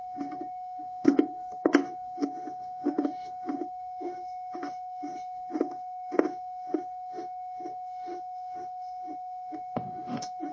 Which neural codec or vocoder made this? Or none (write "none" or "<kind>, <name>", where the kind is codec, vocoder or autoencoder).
autoencoder, DAC-VAE